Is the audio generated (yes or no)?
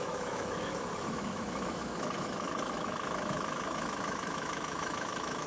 yes